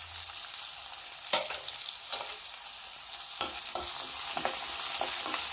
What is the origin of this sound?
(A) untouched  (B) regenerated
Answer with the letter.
A